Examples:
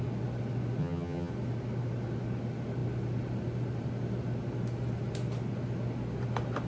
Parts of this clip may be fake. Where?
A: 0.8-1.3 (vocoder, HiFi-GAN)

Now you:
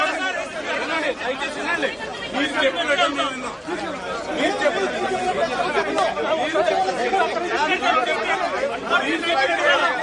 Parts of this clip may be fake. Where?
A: none

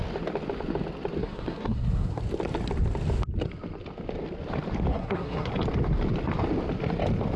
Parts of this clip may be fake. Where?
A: 1.2-2.2 (codec, SNAC); 4.9-5.5

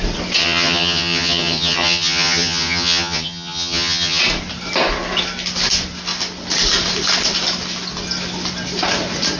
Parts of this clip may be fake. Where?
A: 0.4-4.2 (vocoder, HiFi-GAN)